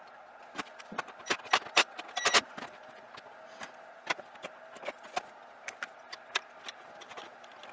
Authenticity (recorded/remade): recorded